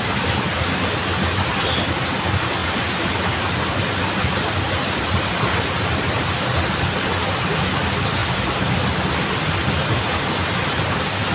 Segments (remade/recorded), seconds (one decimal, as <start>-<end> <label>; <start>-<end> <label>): 0.0-11.3 recorded